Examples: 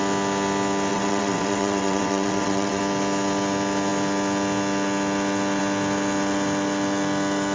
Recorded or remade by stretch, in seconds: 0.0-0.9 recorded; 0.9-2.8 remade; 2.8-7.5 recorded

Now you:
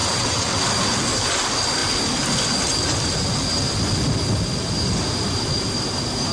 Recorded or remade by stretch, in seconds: 0.0-0.6 remade; 0.6-6.3 recorded

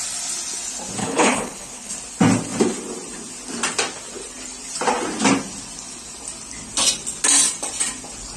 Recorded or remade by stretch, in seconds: 0.0-1.0 recorded; 1.0-1.9 remade; 1.9-8.4 recorded

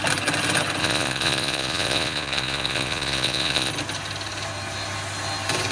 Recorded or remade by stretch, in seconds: 0.0-0.8 recorded; 0.8-3.7 remade; 3.7-5.7 recorded

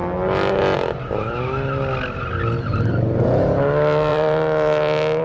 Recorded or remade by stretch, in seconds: 0.0-4.1 recorded; 4.1-5.2 remade

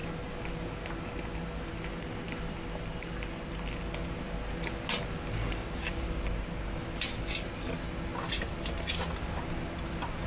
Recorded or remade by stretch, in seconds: 0.0-5.4 recorded; 5.4-5.9 remade; 5.9-10.3 recorded

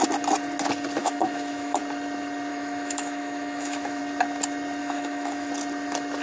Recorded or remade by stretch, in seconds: 0.0-1.0 recorded; 1.0-1.8 remade; 1.8-2.5 recorded; 2.5-4.0 remade; 4.0-4.8 recorded; 4.8-5.5 remade; 5.5-6.2 recorded